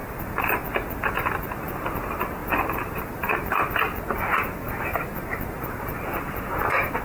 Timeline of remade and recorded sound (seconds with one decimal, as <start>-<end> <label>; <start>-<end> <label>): 0.0-0.6 remade; 0.6-7.0 recorded

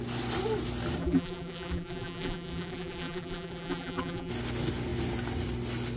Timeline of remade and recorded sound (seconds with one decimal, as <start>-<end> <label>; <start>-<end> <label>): 0.0-1.0 recorded; 1.0-4.3 remade; 4.3-6.0 recorded

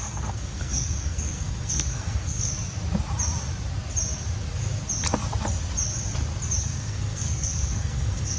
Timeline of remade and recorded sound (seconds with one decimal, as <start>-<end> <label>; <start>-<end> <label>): 0.0-2.5 remade; 2.5-6.6 recorded; 6.6-8.4 remade

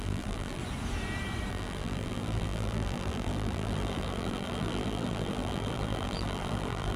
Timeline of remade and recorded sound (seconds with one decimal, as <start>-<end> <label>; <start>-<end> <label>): 0.0-0.6 remade; 0.6-1.5 recorded; 1.5-7.0 remade